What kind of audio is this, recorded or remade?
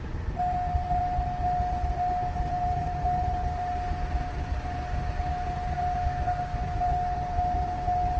recorded